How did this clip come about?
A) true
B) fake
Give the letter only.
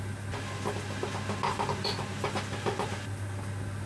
A